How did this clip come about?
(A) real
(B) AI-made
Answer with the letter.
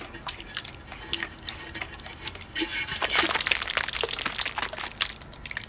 A